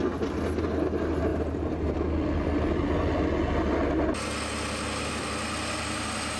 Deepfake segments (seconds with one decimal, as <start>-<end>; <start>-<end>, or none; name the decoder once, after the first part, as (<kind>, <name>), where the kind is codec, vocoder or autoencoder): none